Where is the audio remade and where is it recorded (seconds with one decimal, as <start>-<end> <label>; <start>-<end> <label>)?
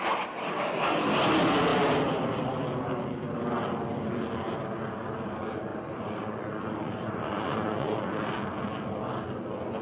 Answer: 0.0-5.7 recorded; 5.7-8.3 remade; 8.3-9.8 recorded